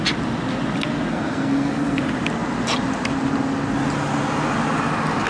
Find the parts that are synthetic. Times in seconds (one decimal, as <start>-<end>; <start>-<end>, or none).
1.1-2.0